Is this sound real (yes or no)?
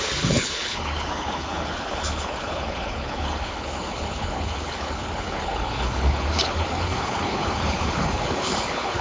no